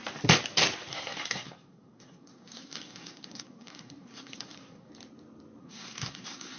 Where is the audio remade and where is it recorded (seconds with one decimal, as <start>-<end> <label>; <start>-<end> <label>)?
0.0-0.9 recorded; 0.9-4.9 remade; 4.9-5.6 recorded; 5.6-6.6 remade